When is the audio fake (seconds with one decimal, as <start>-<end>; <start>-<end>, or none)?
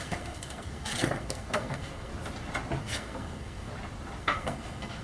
0.0-2.1; 2.8-3.7; 4.2-5.0